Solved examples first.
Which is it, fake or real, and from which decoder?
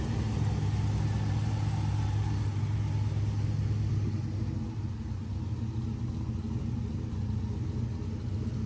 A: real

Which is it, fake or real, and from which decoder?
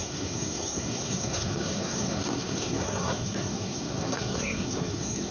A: fake, codec, SNAC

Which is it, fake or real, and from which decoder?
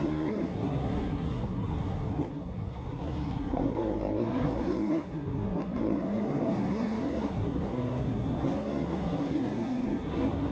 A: fake, codec, SNAC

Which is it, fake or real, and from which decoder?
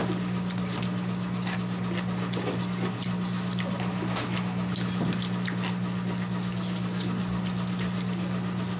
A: real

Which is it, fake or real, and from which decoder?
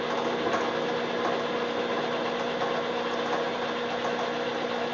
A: real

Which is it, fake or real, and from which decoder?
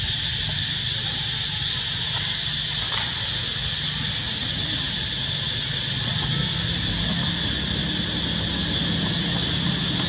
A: real